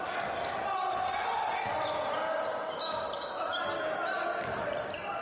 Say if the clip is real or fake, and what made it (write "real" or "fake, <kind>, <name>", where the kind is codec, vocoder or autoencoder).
real